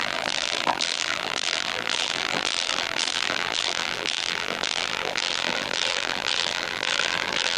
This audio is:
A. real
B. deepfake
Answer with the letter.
B